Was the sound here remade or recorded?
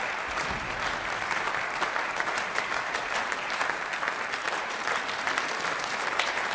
remade